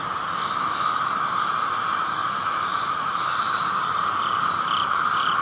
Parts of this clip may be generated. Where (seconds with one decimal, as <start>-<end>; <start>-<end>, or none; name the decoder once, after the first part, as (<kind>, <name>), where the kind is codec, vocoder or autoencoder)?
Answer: 2.2-5.4 (vocoder, BigVGAN v2)